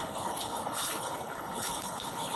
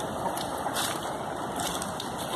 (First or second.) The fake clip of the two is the first